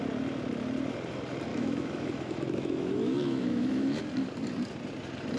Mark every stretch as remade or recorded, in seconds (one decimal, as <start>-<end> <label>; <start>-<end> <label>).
0.0-1.5 recorded; 1.5-4.0 remade; 4.0-5.4 recorded

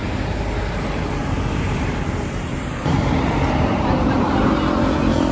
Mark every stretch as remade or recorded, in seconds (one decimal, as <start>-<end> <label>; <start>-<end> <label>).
0.0-1.2 recorded; 1.2-4.4 remade; 4.4-5.3 recorded

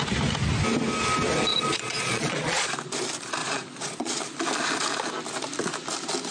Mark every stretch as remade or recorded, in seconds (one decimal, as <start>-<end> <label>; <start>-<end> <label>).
0.0-1.5 recorded; 1.5-2.7 remade; 2.7-3.4 recorded; 3.4-4.2 remade; 4.2-6.3 recorded

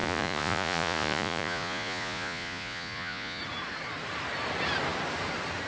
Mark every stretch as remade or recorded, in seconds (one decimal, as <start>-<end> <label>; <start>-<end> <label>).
0.0-3.4 remade; 3.4-5.7 recorded

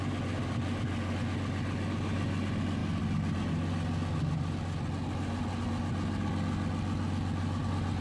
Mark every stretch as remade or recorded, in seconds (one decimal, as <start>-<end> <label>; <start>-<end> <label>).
0.0-8.0 recorded